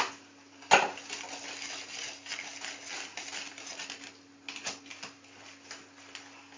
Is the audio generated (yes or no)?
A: no